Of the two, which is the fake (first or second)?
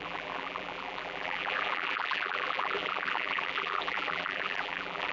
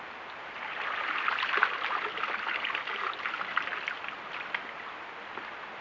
first